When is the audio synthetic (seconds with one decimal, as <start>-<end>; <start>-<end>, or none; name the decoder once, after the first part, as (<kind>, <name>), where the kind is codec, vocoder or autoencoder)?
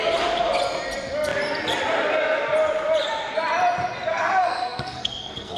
4.1-5.6 (codec, SNAC)